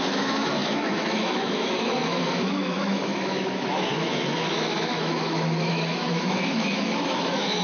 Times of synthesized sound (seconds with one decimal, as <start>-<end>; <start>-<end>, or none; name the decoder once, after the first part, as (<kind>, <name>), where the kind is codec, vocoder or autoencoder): 0.0-7.6 (autoencoder, DAC-VAE)